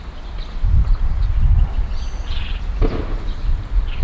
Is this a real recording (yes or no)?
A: yes